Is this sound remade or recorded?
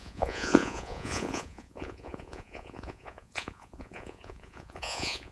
remade